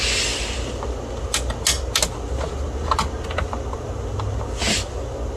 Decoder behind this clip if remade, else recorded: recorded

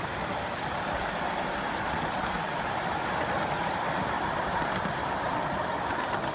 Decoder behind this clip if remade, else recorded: recorded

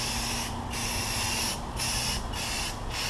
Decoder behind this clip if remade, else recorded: recorded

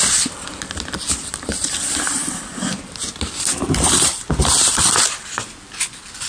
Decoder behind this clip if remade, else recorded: remade, vocoder, BigVGAN v2